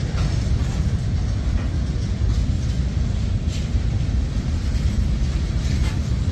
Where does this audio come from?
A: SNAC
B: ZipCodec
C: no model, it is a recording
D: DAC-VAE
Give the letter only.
C